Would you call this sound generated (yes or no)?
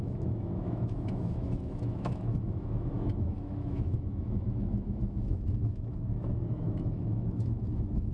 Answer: yes